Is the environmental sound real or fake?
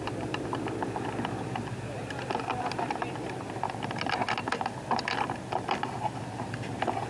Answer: real